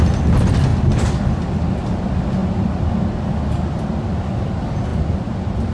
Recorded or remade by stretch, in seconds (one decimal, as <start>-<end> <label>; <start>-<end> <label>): 0.0-5.7 recorded